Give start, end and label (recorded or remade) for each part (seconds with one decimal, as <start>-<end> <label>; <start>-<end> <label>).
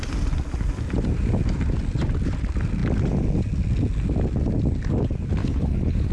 0.0-5.4 recorded; 5.4-6.1 remade